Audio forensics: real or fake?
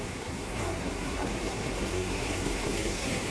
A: fake